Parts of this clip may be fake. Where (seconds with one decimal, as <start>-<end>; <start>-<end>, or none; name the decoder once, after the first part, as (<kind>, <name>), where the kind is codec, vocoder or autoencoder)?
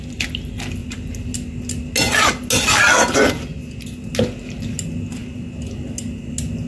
none